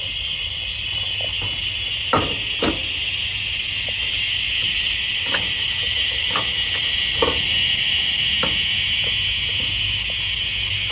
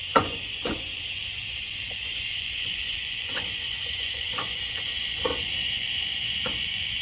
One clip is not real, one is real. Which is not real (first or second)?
second